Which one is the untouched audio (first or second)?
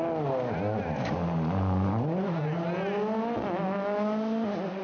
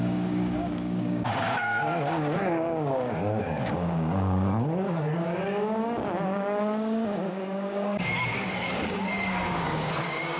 first